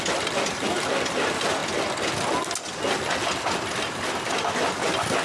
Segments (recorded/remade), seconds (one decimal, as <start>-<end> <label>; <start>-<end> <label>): 0.0-5.2 recorded